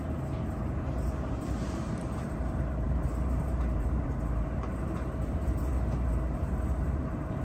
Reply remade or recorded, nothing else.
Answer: remade